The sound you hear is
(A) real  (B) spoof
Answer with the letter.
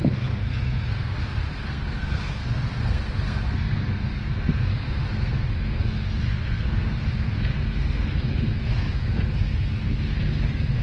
B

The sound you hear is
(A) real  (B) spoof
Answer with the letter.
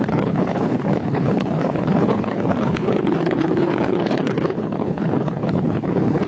B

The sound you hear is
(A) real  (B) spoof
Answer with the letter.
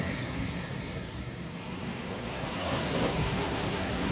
B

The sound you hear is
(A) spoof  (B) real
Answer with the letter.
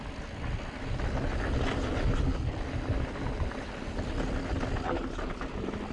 B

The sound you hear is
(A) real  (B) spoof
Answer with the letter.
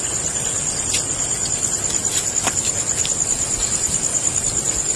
A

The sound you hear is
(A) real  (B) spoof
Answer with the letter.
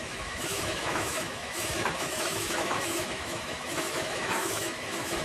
B